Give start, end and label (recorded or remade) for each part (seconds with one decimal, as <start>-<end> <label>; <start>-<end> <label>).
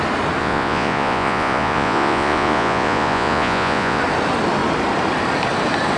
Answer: 0.0-0.4 recorded; 0.4-4.0 remade; 4.0-6.0 recorded